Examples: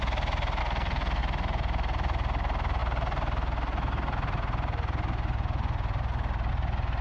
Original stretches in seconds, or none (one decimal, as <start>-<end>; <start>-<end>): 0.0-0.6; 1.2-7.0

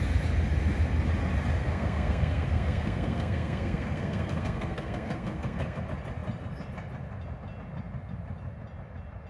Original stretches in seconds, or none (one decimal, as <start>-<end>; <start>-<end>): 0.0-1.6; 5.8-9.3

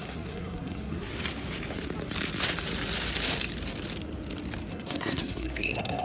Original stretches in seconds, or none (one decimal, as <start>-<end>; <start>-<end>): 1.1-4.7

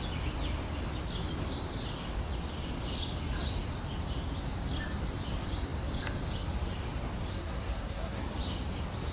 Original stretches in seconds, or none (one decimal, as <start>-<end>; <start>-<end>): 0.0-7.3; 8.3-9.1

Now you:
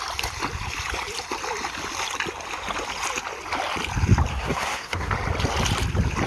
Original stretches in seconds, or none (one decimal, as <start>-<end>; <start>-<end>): 0.0-4.3; 5.1-6.3